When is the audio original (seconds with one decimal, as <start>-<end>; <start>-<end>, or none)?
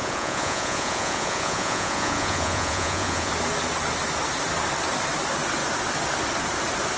3.3-7.0